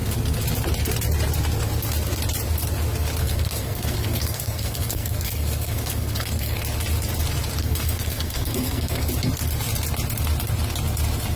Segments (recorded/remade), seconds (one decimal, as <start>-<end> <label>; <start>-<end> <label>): 0.0-3.2 recorded; 3.2-6.6 remade; 6.6-7.6 recorded; 7.6-9.1 remade; 9.1-11.4 recorded